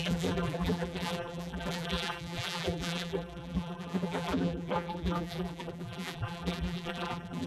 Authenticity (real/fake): fake